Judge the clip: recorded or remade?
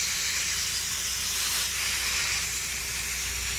recorded